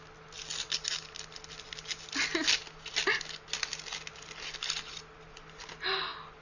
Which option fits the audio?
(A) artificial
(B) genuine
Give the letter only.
B